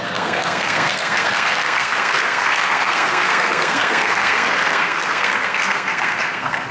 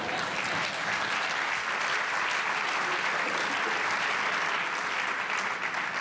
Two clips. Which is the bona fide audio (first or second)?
second